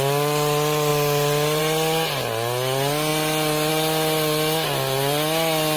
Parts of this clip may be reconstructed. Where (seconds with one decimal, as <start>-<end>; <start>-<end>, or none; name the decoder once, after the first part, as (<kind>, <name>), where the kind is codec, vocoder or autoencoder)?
none

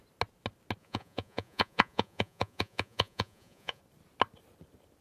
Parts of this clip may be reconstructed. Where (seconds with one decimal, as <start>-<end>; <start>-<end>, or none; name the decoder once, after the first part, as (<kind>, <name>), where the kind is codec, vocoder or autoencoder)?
0.8-3.8 (vocoder, Vocos)